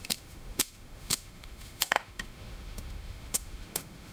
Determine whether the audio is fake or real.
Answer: fake